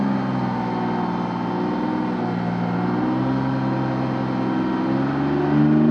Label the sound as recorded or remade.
recorded